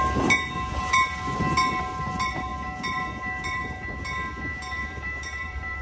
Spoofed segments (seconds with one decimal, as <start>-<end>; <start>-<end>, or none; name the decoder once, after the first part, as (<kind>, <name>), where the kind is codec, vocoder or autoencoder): 4.8-5.8 (vocoder, BigVGAN v2)

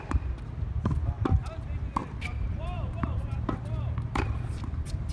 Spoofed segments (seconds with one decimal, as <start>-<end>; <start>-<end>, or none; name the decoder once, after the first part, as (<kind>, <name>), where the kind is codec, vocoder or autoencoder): 2.0-5.1 (vocoder, BigVGAN v2)

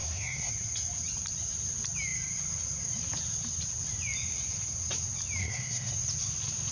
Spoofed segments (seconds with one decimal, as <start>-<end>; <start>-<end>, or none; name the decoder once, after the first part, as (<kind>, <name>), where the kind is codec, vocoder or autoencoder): 0.0-0.5 (codec, SNAC); 5.4-5.9

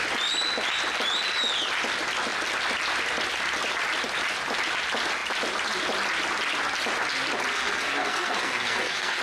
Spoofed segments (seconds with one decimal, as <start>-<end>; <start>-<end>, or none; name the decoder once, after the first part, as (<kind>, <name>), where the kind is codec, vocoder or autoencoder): 7.5-9.2 (codec, SNAC)

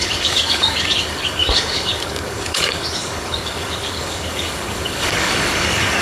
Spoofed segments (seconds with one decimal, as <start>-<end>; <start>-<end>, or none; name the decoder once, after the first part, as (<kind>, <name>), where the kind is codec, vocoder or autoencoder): 0.0-6.0 (codec, DAC)